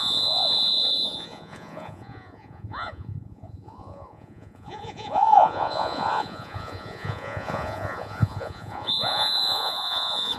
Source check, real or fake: fake